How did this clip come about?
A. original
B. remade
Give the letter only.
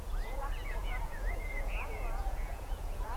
B